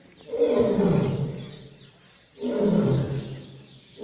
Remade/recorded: recorded